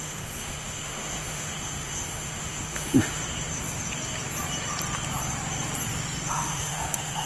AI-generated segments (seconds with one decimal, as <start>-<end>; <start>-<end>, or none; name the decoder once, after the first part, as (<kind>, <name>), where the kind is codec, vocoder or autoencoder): 0.0-3.2 (autoencoder, DAC-VAE); 6.3-7.3